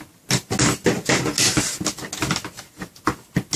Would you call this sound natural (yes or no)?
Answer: yes